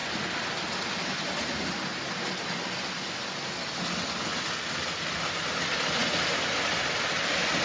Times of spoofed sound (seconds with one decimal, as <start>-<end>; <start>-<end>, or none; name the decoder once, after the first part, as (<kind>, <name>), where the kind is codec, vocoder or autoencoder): none